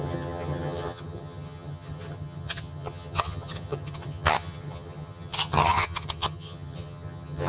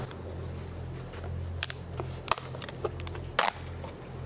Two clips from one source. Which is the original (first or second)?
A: second